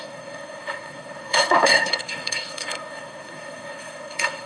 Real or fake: fake